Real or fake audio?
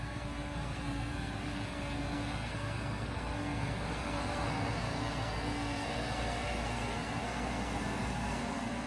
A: fake